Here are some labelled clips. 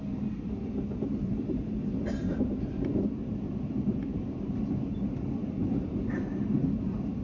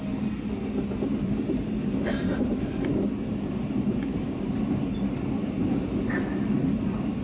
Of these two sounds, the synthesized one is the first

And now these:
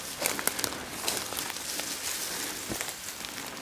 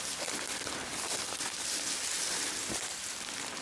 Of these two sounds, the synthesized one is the second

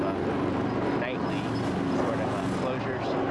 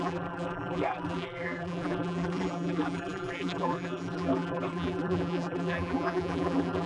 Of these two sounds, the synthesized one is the second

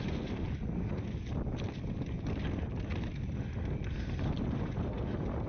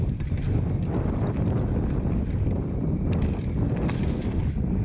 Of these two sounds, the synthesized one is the second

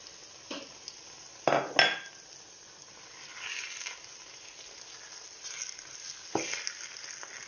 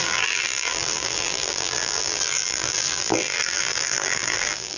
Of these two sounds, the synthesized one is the second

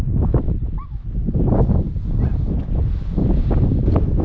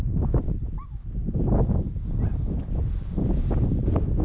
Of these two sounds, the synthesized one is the first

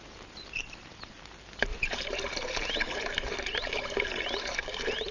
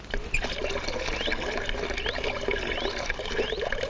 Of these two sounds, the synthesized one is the first